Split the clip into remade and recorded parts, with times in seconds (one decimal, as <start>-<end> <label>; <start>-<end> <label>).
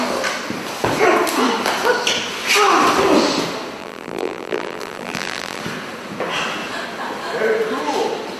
0.0-3.8 recorded; 3.8-5.6 remade; 5.6-8.4 recorded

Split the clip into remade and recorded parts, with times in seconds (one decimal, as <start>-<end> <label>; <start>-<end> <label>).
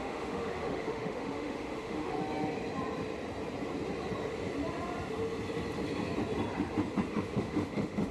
0.0-2.2 remade; 2.2-7.1 recorded; 7.1-8.1 remade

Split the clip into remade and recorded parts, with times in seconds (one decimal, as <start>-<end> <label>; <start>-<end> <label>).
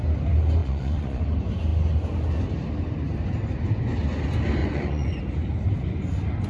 0.0-0.6 recorded; 0.6-1.2 remade; 1.2-4.6 recorded; 4.6-5.2 remade; 5.2-6.5 recorded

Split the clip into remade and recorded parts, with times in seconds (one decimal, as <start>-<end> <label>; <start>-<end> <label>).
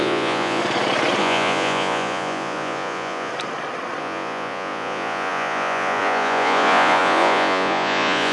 0.0-0.6 remade; 0.6-1.2 recorded; 1.2-3.3 remade; 3.3-4.0 recorded; 4.0-8.3 remade